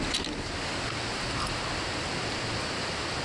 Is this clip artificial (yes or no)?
no